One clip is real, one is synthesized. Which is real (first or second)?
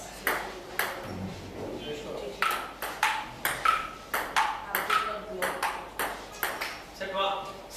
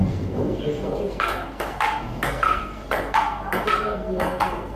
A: first